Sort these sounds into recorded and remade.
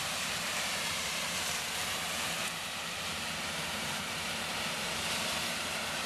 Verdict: remade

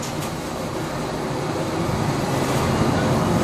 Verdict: recorded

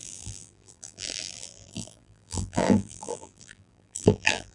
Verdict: remade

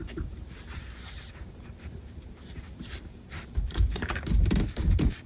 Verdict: remade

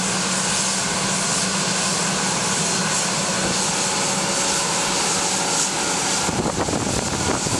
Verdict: recorded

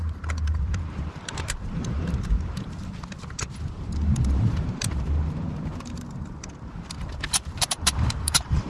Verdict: remade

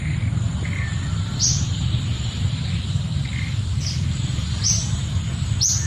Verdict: recorded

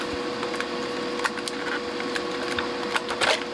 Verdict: recorded